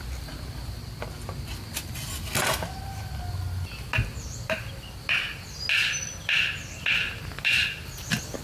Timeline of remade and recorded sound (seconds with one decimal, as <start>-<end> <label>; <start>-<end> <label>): 0.0-8.4 recorded